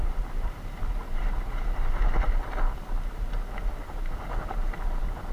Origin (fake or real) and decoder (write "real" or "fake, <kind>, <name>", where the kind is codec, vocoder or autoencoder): real